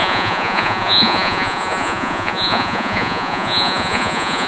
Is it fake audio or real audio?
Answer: fake